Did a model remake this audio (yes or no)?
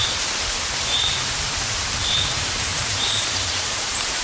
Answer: yes